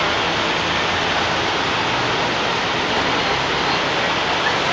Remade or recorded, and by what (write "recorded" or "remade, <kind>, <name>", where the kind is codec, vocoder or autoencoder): recorded